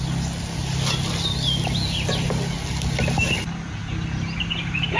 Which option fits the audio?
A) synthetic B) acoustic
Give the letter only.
B